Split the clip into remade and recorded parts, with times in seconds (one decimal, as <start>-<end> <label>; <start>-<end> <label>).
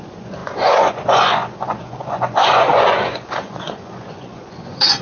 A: 0.0-5.0 remade